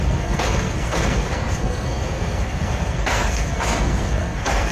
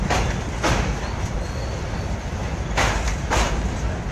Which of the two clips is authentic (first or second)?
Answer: second